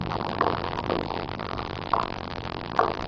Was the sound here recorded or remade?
remade